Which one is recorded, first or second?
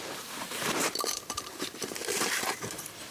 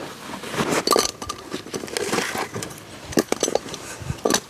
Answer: second